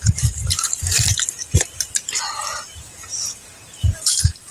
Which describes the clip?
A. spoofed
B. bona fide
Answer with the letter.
A